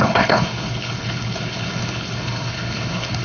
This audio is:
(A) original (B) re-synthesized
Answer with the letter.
B